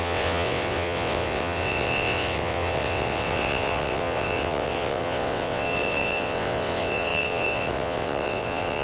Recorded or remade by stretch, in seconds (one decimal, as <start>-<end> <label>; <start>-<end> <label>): 0.0-8.8 remade